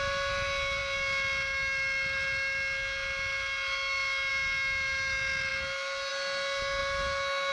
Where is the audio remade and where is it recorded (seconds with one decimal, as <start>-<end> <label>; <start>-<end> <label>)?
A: 0.0-7.5 recorded